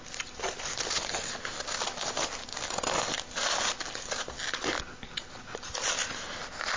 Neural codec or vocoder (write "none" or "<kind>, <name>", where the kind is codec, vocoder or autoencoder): none